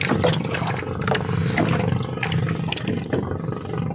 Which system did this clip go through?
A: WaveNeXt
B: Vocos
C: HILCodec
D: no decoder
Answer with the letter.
D